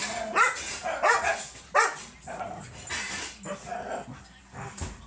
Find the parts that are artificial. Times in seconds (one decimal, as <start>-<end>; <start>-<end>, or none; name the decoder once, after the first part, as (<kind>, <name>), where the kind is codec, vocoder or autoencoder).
none